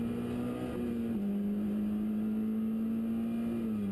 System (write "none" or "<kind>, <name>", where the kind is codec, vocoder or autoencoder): none